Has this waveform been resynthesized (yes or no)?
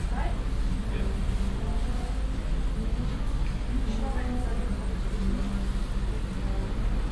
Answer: no